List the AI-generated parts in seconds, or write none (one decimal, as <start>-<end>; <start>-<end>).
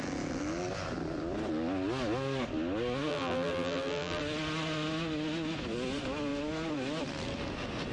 3.1-4.2